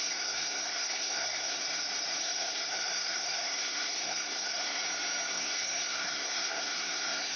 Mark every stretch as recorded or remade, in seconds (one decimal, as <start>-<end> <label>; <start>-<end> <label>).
0.0-1.6 remade; 1.6-2.2 recorded; 2.2-4.8 remade; 4.8-5.3 recorded; 5.3-7.4 remade